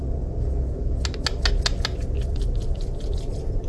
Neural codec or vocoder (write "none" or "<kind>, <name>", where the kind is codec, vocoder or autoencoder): none